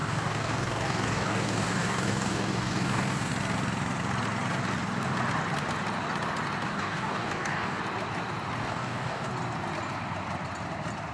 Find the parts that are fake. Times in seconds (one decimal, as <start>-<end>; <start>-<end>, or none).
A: 0.0-3.3; 6.7-7.8; 8.6-9.3